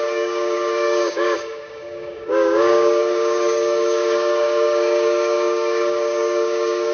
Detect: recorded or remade remade